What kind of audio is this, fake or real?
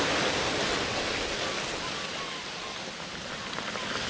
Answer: real